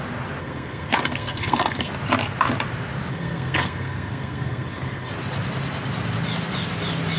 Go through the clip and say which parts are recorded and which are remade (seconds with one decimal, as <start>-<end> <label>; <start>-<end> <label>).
0.0-0.4 recorded; 0.4-1.9 remade; 1.9-3.1 recorded; 3.1-5.1 remade; 5.1-7.2 recorded

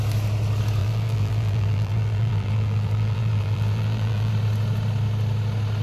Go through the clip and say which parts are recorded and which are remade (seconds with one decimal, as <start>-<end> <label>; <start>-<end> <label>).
0.0-0.8 recorded; 0.8-4.3 remade; 4.3-5.8 recorded

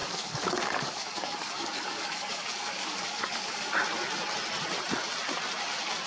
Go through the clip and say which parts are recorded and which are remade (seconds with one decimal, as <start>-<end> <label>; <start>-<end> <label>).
0.0-3.7 remade; 3.7-6.1 recorded

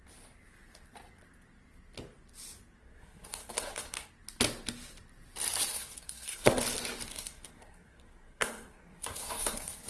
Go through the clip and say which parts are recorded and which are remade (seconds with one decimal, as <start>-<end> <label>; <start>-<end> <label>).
0.0-2.8 recorded; 2.8-4.1 remade; 4.1-5.7 recorded; 5.7-6.6 remade; 6.6-7.1 recorded; 7.1-9.9 remade

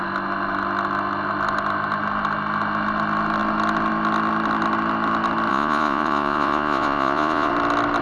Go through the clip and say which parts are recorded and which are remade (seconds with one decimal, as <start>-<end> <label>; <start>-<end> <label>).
0.0-5.5 recorded; 5.5-7.5 remade; 7.5-8.0 recorded

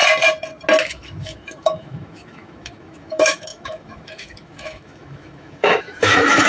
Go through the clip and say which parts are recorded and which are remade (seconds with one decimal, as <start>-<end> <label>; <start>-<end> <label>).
0.0-0.8 recorded; 0.8-6.5 remade